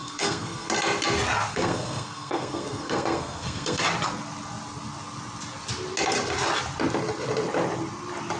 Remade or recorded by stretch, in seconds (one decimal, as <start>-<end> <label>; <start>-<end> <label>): 0.0-0.7 remade; 0.7-1.5 recorded; 1.5-3.8 remade; 3.8-8.4 recorded